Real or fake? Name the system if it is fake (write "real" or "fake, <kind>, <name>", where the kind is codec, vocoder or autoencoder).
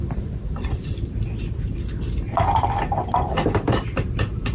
fake, vocoder, BigVGAN v2